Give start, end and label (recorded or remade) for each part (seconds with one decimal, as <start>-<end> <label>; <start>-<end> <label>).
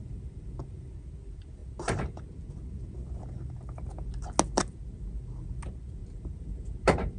0.0-0.9 remade; 0.9-6.0 recorded; 6.0-7.2 remade